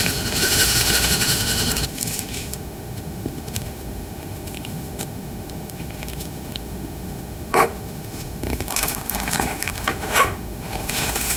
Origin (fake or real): fake